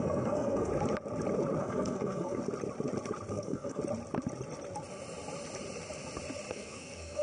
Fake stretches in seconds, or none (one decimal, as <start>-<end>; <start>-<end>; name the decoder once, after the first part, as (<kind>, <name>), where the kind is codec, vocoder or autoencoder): 0.0-0.7 (codec, SNAC); 1.6-2.4; 3.3-3.8; 6.5-7.2